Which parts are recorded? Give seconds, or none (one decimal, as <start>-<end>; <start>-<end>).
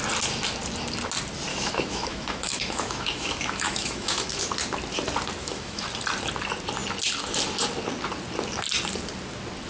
0.0-1.5; 4.4-5.4; 5.9-9.7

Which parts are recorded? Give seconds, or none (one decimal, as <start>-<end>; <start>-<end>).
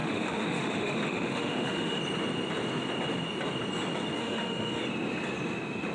2.0-4.2; 4.8-5.9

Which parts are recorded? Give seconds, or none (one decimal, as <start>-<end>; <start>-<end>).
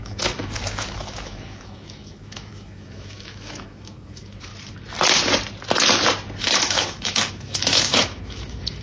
4.5-6.4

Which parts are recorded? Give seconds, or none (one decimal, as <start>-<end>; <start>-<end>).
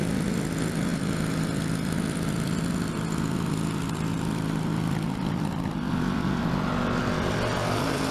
0.0-8.1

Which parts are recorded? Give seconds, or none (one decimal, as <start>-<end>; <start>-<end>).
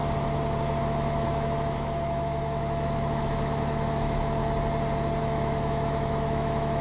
0.0-0.8; 4.4-5.2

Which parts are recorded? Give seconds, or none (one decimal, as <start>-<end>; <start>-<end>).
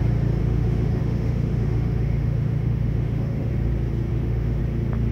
0.0-0.4; 3.5-4.1; 4.6-5.1